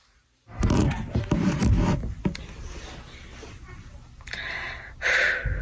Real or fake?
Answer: real